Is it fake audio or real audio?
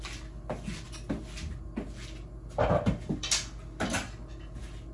real